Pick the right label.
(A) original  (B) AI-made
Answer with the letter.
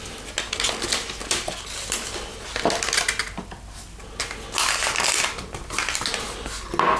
A